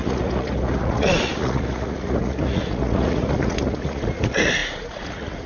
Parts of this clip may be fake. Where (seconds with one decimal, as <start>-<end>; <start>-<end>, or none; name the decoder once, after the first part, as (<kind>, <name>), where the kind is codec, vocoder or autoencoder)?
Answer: 0.0-5.5 (vocoder, Vocos)